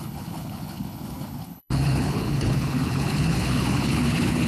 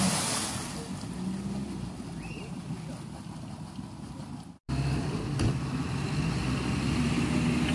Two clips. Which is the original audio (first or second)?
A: second